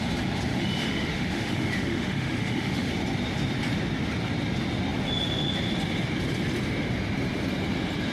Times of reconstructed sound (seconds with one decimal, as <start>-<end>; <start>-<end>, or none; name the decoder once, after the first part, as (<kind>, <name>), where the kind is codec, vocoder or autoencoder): 0.5-2.9 (autoencoder, DAC-VAE)